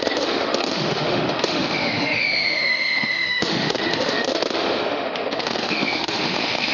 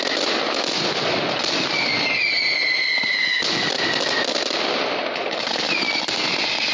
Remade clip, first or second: first